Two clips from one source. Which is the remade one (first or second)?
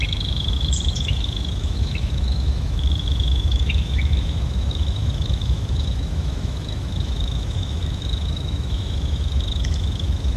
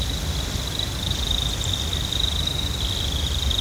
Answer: first